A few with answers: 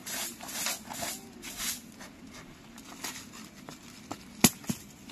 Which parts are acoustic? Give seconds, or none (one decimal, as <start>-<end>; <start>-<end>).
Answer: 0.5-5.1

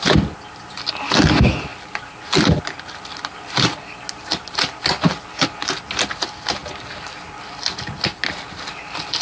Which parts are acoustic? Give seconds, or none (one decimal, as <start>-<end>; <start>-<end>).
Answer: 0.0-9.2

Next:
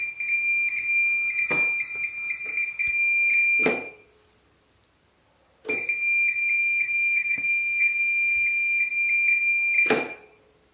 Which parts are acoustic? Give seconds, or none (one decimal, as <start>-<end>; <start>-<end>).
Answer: 0.0-6.6; 8.8-10.7

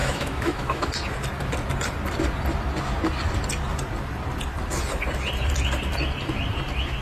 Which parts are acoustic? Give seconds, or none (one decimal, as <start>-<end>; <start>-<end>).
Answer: 0.9-7.0